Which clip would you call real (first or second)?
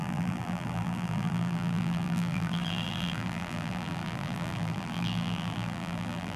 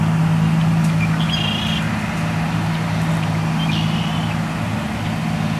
second